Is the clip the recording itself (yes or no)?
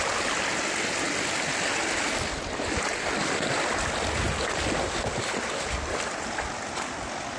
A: yes